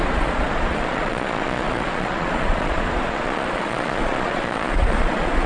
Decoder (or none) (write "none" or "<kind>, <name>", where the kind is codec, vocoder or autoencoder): vocoder, Vocos